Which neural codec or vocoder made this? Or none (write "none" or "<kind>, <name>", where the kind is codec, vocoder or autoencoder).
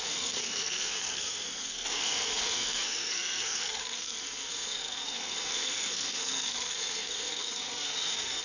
codec, SNAC